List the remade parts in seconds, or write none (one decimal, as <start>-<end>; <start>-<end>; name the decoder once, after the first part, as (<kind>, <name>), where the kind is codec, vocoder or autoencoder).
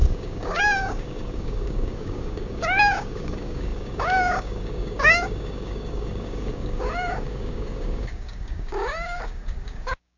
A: 0.0-10.2 (codec, DAC)